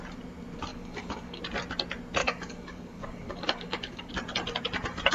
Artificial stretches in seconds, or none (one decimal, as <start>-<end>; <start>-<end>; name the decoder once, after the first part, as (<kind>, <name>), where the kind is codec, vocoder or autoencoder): 0.7-1.4 (codec, DAC); 2.2-4.1